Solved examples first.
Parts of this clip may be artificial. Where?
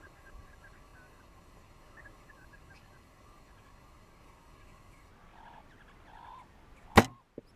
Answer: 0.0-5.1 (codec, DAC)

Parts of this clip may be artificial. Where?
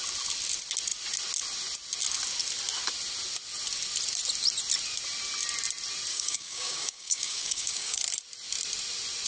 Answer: 6.1-8.0 (codec, DAC)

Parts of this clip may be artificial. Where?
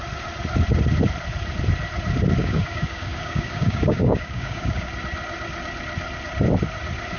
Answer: 2.4-4.9 (codec, DAC)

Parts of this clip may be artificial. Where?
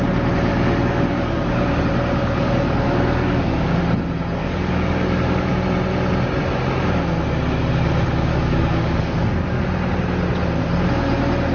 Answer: 0.5-1.7 (codec, DAC); 2.2-3.8; 4.4-5.5; 8.3-9.6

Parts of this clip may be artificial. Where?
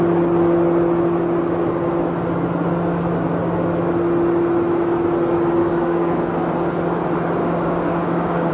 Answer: 5.6-6.2 (codec, DAC); 7.4-8.5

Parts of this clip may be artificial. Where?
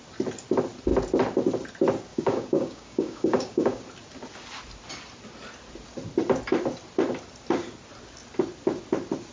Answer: 2.1-3.8 (codec, DAC)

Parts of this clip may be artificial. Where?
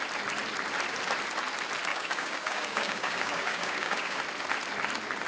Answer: 1.9-4.2 (codec, DAC)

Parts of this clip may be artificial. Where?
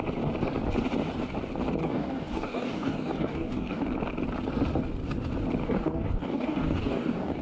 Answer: 1.8-3.8 (codec, DAC); 5.6-7.4